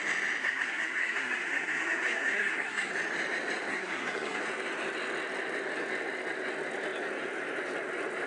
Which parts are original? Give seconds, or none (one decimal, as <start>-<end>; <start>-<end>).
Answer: 0.0-0.4; 2.9-3.7; 4.4-8.3